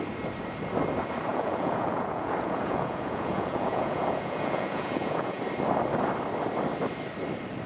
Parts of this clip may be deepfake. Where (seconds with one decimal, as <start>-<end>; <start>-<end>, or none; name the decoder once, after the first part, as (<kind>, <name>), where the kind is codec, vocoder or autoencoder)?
1.3-5.4 (vocoder, Vocos)